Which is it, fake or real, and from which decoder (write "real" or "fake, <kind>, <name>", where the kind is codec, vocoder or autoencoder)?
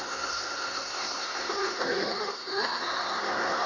fake, codec, SNAC